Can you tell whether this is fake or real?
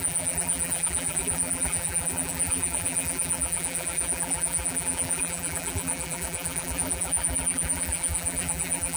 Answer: fake